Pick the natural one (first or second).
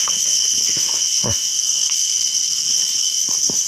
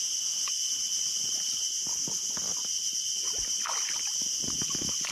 second